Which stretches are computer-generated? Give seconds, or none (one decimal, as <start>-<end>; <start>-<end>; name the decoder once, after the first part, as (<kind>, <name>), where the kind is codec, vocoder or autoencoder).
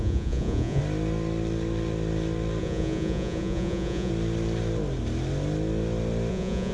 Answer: 0.0-0.8 (vocoder, Vocos); 2.6-4.1; 6.3-6.7